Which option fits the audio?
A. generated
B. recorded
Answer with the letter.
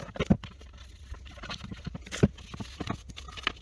B